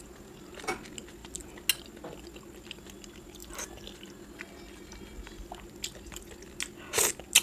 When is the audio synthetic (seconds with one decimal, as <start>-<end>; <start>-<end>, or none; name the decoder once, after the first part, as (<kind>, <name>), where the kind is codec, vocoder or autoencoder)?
3.4-4.1 (vocoder, BigVGAN v2)